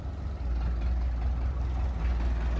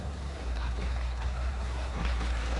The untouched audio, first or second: first